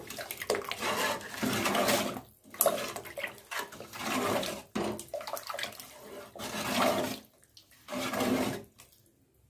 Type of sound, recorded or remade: recorded